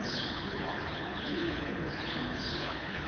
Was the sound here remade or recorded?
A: remade